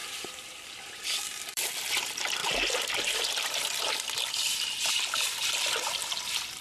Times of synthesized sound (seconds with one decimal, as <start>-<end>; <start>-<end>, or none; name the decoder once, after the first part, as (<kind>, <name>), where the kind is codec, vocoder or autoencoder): 0.0-2.4 (vocoder, BigVGAN v2); 4.9-6.6